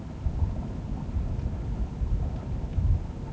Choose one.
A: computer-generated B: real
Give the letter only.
B